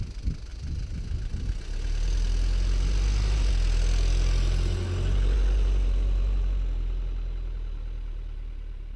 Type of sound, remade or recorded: recorded